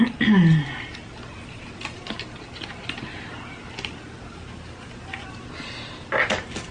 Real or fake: real